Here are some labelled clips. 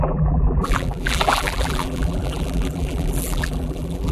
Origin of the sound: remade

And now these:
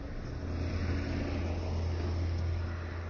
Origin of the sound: recorded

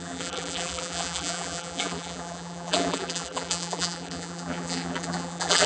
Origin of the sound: remade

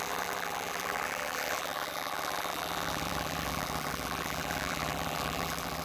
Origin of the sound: remade